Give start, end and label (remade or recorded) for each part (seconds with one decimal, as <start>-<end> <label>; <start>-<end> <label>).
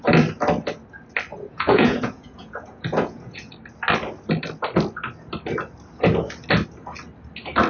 0.0-1.3 recorded; 1.3-3.5 remade; 3.5-7.7 recorded